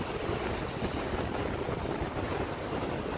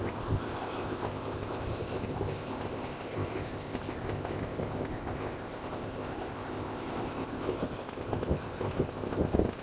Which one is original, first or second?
first